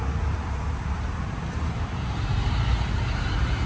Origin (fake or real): fake